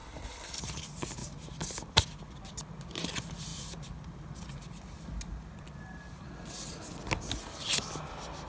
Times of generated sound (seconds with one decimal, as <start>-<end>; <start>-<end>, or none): 0.0-0.6